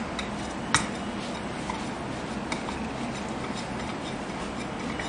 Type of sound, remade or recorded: recorded